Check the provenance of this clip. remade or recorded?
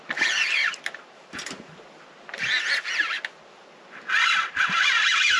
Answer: recorded